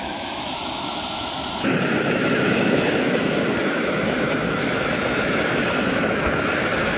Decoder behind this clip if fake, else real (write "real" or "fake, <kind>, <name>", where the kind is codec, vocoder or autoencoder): fake, autoencoder, DAC-VAE